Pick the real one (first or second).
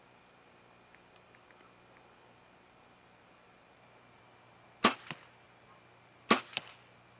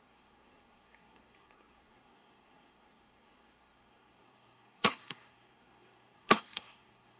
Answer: first